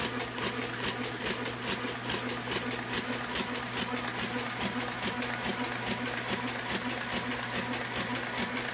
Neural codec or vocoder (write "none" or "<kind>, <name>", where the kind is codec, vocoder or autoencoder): none